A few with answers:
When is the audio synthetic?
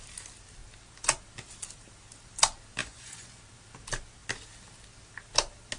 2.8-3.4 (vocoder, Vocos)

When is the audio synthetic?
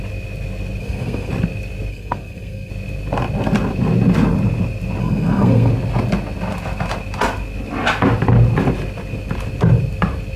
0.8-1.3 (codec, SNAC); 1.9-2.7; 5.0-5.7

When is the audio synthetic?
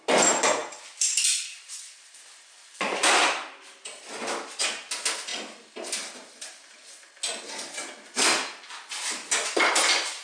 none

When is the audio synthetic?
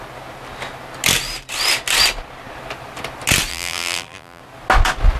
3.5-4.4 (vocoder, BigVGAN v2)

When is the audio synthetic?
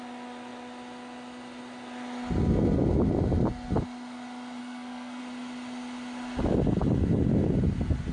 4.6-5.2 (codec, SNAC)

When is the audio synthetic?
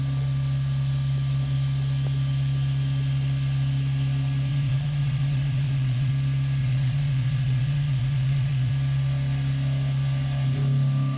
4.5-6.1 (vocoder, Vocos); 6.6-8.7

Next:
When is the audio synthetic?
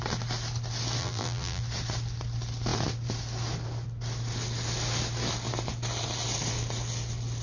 1.0-1.6 (vocoder, BigVGAN v2)